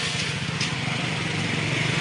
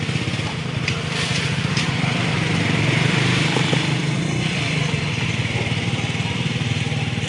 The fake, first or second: second